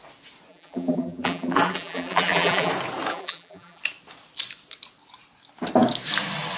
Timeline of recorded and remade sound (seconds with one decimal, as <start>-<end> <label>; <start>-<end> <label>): 0.0-0.5 recorded; 0.5-2.7 remade; 2.7-3.1 recorded; 3.1-3.8 remade; 3.8-6.6 recorded